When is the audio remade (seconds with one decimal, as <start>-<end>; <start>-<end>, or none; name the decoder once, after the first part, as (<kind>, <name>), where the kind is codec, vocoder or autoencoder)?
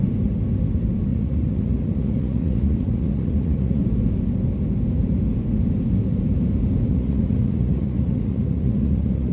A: 1.1-3.8 (vocoder, Vocos); 6.9-9.3